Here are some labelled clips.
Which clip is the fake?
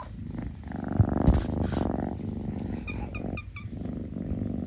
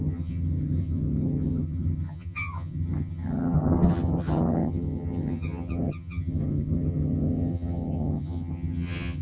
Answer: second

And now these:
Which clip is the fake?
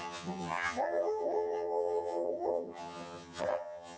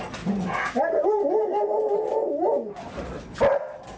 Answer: first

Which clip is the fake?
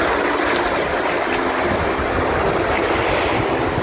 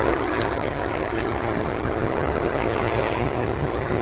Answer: second